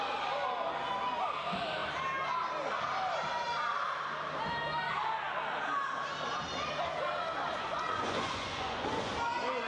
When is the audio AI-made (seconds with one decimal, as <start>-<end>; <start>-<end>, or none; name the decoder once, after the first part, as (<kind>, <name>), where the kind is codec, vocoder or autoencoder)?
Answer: 7.6-9.1 (vocoder, Vocos)